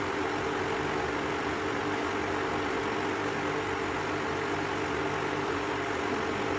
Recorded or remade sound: recorded